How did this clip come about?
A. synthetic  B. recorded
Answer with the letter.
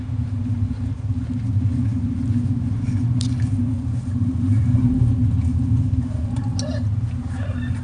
B